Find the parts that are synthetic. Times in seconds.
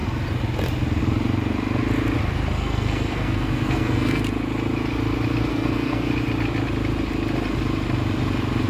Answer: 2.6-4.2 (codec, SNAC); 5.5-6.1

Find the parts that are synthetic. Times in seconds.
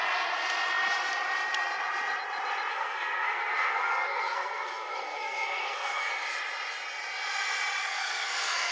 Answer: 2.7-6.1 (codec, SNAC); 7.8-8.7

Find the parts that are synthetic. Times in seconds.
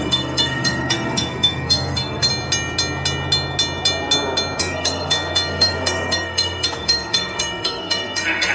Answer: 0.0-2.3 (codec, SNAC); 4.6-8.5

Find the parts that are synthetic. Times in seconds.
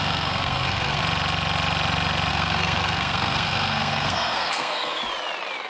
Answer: 0.0-1.0 (codec, SNAC); 2.3-5.0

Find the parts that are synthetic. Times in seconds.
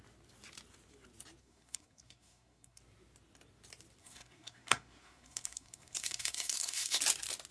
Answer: 1.4-2.8 (codec, SNAC); 4.0-7.0